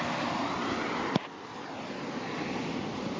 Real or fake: real